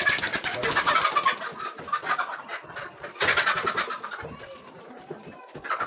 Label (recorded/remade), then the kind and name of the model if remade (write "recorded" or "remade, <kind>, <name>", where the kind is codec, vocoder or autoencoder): recorded